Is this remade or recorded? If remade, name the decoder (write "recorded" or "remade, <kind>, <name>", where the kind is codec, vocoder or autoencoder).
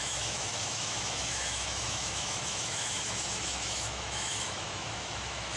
remade, autoencoder, DAC-VAE